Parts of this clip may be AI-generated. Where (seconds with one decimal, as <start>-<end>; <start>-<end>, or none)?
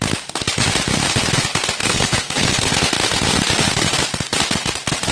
1.8-2.7